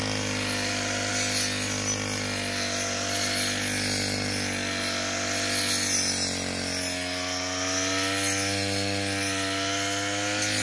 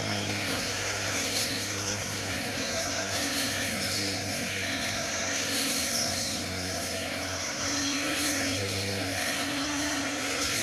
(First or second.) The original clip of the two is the first